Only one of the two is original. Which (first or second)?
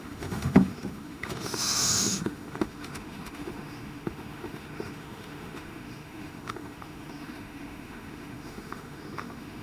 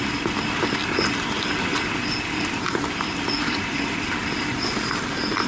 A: second